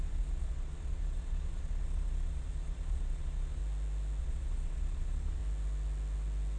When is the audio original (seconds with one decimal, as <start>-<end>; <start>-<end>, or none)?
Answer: 3.6-4.2; 5.4-6.6